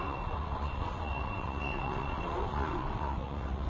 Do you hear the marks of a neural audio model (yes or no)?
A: yes